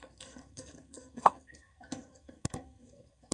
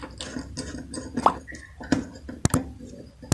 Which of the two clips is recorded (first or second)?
second